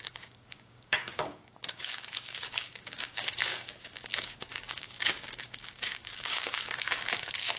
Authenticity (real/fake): fake